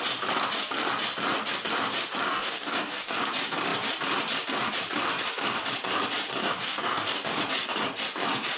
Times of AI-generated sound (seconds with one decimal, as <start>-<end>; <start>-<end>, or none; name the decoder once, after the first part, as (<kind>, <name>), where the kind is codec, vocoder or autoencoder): 2.3-3.2 (codec, DAC); 6.4-7.4